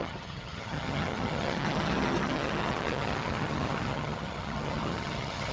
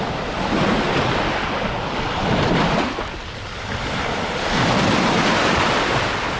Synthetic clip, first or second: first